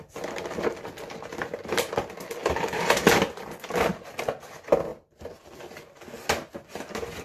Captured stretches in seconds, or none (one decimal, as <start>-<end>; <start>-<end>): 0.0-1.3; 1.9-2.4; 3.0-7.2